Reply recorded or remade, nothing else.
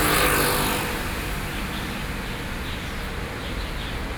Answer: recorded